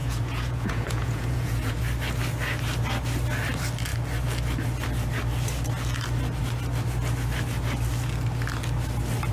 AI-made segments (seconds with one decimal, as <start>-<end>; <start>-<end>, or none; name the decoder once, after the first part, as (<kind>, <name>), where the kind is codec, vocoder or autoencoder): 0.0-1.8 (vocoder, Vocos)